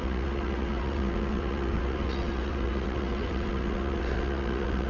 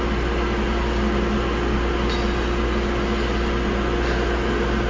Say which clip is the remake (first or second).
first